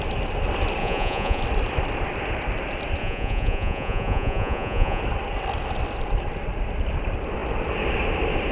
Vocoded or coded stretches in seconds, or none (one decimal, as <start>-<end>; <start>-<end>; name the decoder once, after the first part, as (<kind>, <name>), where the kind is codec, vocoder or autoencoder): 0.8-1.4 (vocoder, Vocos); 3.0-5.0